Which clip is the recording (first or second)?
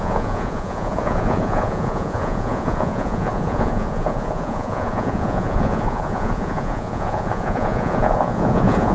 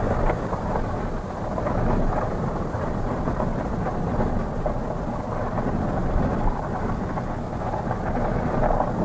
second